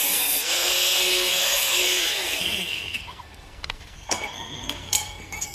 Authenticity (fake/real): fake